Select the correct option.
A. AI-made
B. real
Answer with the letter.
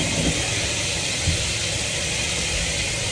B